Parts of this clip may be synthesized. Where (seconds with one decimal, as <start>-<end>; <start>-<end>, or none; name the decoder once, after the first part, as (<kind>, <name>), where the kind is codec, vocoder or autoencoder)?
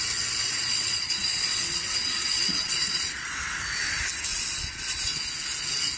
0.4-3.3 (vocoder, Vocos); 4.3-5.2